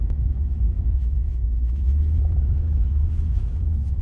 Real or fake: fake